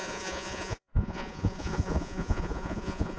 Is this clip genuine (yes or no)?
no